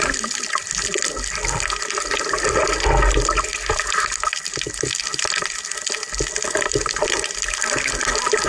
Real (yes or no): yes